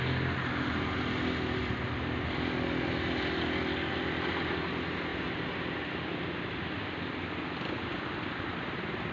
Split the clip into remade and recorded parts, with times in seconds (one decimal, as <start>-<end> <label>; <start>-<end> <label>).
0.0-9.1 recorded